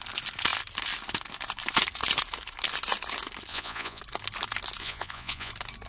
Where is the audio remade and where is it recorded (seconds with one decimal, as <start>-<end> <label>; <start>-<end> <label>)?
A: 0.0-3.5 recorded; 3.5-4.0 remade; 4.0-4.8 recorded; 4.8-5.5 remade; 5.5-5.9 recorded